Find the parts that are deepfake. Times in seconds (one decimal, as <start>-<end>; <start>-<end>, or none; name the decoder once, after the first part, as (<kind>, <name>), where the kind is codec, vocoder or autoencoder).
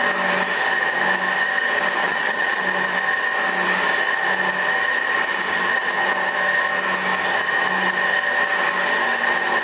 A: 2.0-2.6 (vocoder, HiFi-GAN)